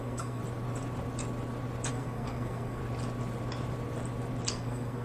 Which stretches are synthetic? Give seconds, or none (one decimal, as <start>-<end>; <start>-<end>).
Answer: 0.0-0.4; 1.9-2.8; 4.5-5.0